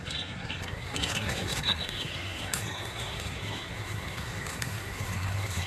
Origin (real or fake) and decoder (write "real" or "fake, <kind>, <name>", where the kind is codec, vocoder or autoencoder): fake, codec, SNAC